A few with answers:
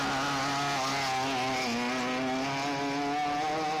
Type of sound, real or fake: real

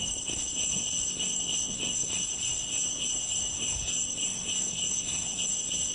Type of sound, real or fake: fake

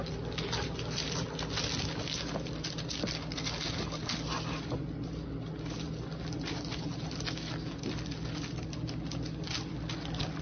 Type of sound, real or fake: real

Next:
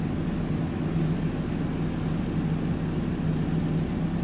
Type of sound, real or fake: real